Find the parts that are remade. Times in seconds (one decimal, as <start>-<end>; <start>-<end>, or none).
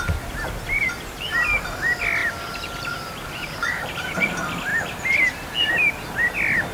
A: 2.2-4.3